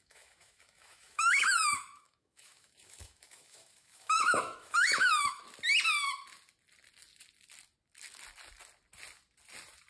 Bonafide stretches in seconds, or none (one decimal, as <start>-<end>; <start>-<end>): 5.4-9.9